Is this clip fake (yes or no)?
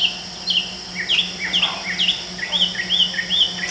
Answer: no